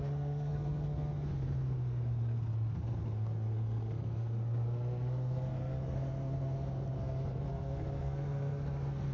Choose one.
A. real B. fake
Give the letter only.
B